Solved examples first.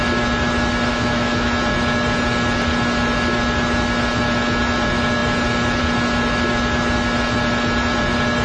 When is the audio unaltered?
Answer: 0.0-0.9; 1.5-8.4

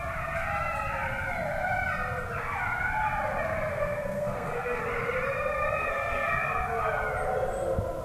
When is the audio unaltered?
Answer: 0.0-3.7; 4.8-5.8; 6.8-8.0

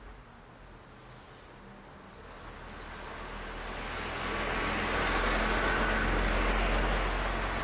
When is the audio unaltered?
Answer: 0.0-7.6

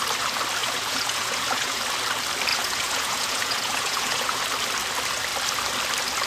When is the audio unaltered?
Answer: 0.0-0.6; 1.8-2.5; 4.4-6.3

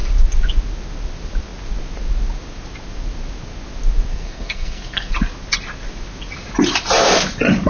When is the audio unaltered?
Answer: 0.0-4.1; 5.1-7.7

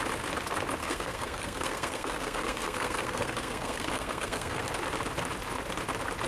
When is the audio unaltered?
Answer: 0.0-0.8; 4.6-6.3

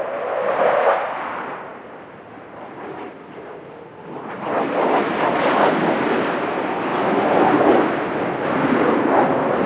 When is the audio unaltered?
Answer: 0.0-1.7; 5.3-9.7